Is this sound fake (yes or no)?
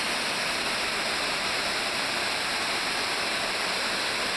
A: no